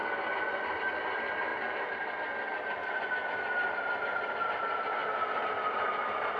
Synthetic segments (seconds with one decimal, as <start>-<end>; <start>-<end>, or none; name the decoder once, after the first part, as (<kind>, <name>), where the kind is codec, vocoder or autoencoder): none